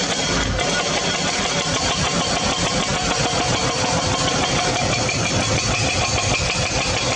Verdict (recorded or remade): recorded